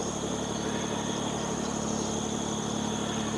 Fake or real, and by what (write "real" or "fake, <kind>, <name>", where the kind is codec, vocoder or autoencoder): real